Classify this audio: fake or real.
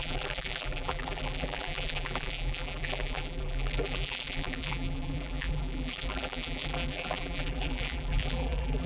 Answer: fake